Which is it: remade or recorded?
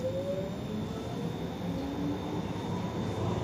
recorded